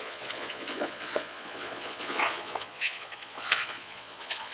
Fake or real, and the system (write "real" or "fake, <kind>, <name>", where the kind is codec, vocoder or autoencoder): fake, vocoder, Vocos